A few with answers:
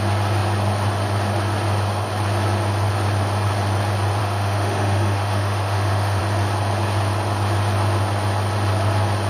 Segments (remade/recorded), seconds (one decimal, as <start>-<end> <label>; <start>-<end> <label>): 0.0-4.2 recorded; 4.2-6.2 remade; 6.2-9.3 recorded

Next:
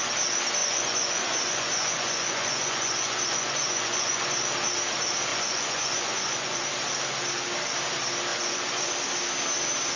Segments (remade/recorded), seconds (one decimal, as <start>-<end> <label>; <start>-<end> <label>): 0.0-0.6 recorded; 0.6-4.4 remade; 4.4-5.3 recorded; 5.3-6.6 remade; 6.6-8.3 recorded; 8.3-8.9 remade; 8.9-10.0 recorded

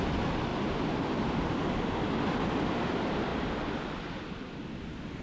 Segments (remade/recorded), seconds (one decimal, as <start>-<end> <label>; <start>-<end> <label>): 0.0-5.2 recorded